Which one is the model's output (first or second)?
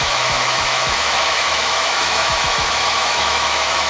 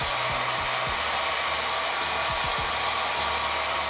first